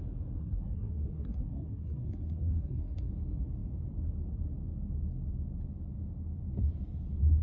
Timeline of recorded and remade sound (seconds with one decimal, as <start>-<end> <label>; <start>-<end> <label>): 0.0-0.4 recorded; 0.4-3.1 remade; 3.1-7.4 recorded